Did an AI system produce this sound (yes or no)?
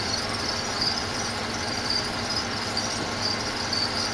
yes